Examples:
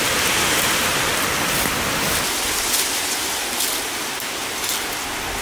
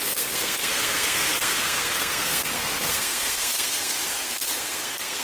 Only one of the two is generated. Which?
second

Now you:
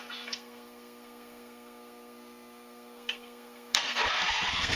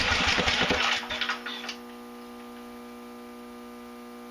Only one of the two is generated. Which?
first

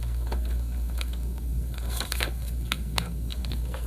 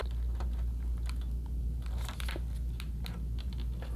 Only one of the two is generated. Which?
first